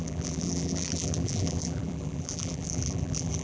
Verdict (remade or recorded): remade